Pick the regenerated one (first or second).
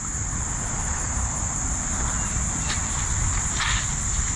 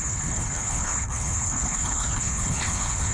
second